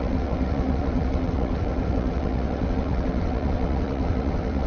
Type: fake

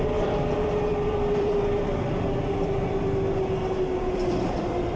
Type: fake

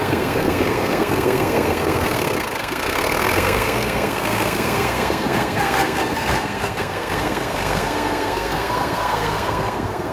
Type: fake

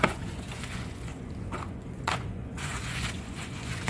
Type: fake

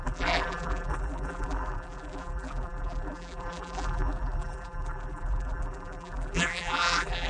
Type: fake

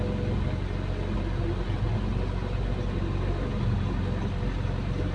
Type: real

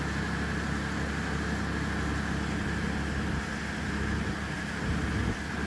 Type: real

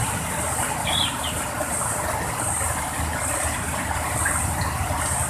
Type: real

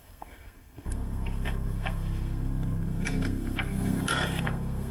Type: fake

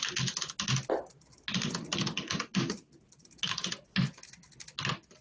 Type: real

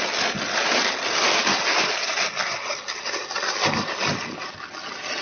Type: real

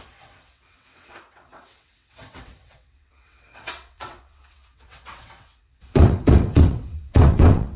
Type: fake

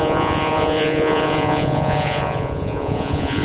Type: fake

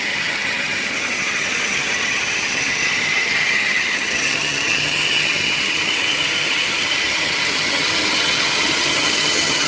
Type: fake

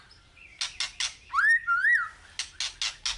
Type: real